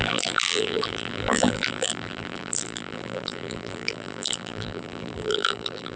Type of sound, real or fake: fake